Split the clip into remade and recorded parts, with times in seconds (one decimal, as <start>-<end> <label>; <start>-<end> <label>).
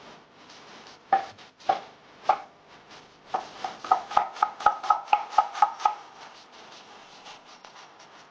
0.0-7.0 recorded; 7.0-7.7 remade; 7.7-8.3 recorded